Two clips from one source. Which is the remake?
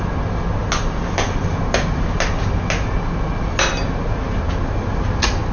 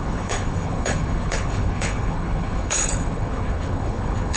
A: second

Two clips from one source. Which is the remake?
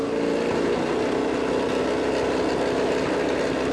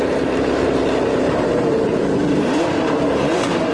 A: second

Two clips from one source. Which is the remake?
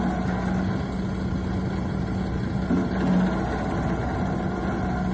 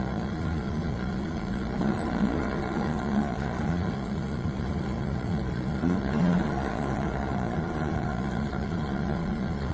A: second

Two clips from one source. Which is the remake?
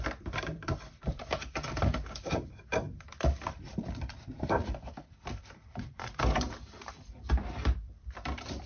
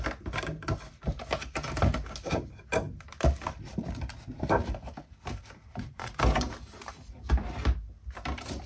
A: first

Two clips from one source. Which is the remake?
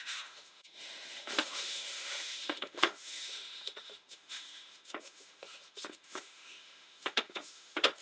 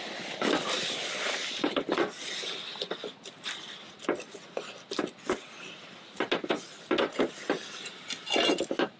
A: first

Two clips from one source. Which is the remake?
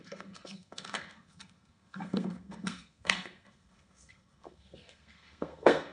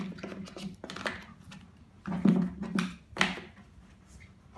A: first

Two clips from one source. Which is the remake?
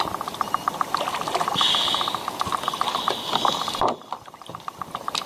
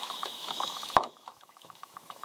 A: second